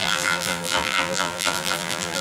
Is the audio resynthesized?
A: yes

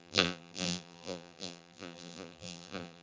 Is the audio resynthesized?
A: yes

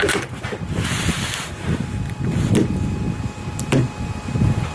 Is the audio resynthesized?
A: yes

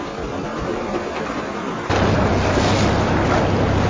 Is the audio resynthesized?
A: no